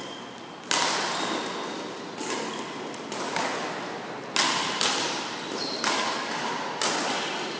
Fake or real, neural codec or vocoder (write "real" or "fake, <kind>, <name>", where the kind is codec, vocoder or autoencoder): real